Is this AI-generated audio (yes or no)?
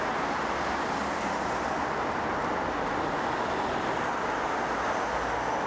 no